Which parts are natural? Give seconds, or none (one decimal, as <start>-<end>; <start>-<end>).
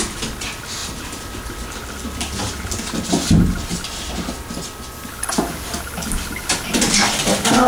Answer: 0.0-3.7; 4.5-7.7